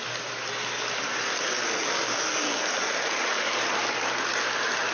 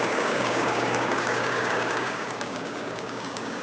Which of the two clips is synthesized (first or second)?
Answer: second